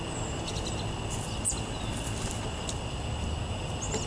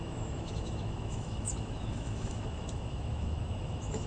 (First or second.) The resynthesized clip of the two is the second